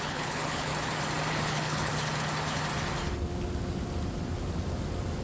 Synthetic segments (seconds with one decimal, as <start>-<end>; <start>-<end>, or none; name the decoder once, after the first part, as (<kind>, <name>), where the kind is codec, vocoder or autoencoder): 0.0-0.7 (codec, HILCodec); 1.3-1.9